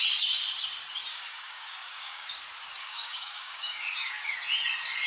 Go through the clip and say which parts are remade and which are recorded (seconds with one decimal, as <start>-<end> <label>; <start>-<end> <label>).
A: 0.0-1.1 recorded; 1.1-2.3 remade; 2.3-2.8 recorded; 2.8-4.3 remade; 4.3-5.1 recorded